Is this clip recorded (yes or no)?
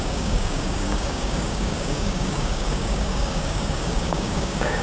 no